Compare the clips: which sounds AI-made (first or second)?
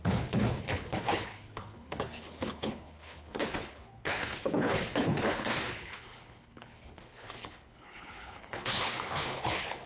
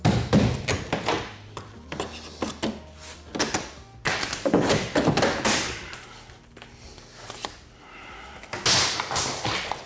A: first